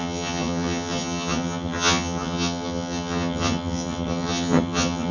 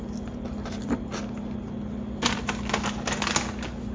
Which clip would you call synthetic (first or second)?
first